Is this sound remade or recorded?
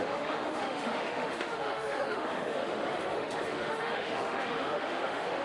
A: remade